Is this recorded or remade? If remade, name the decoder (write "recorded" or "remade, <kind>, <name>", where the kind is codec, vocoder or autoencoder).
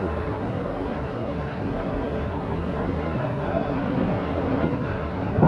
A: remade, codec, SNAC